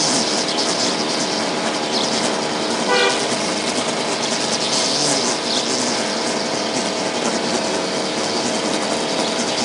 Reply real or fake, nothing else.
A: real